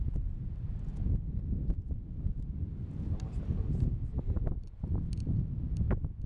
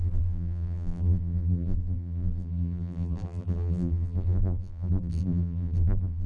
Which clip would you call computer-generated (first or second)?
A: second